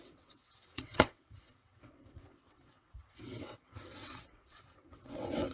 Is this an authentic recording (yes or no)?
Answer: no